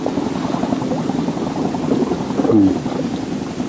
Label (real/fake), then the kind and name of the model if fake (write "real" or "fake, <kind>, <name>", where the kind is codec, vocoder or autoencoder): real